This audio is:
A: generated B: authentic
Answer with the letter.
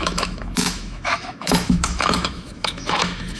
A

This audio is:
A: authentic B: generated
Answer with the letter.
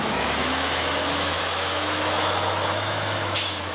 B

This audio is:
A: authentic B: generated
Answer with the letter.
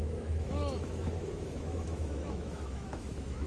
B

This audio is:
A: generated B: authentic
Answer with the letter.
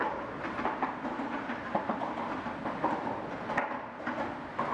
B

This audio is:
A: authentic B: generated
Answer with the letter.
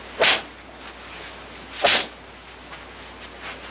A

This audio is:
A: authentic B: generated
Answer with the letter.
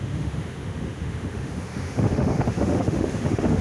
B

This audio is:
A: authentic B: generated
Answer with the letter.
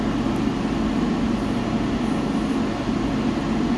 A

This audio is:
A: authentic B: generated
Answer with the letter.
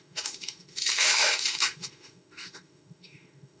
B